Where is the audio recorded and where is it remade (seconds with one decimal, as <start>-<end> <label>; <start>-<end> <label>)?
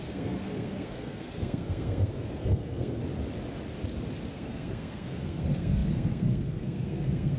0.0-3.0 remade; 3.0-4.3 recorded; 4.3-7.4 remade